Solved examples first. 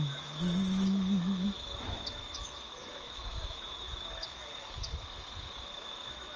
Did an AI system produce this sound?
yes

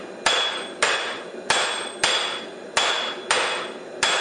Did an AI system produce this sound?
no